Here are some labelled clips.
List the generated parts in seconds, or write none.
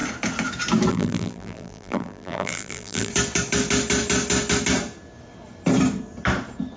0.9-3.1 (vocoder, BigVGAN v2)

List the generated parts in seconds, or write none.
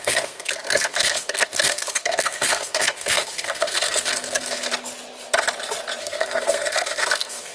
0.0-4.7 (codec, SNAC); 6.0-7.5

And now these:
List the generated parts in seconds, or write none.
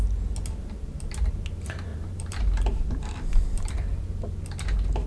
1.9-3.0 (vocoder, BigVGAN v2)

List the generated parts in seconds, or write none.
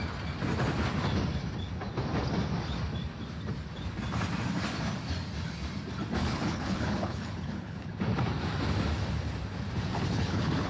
6.2-7.9 (codec, HILCodec); 9.9-10.7